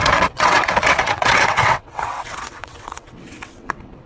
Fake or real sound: fake